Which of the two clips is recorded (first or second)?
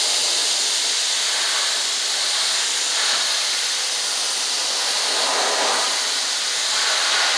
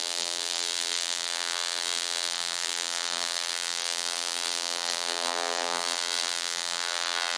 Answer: first